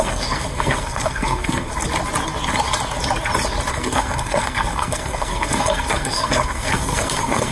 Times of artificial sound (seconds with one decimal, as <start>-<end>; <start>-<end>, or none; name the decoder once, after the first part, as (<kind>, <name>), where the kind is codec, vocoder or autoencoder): 0.0-1.7 (codec, SNAC); 3.7-7.5